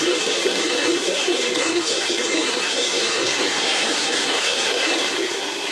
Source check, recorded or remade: remade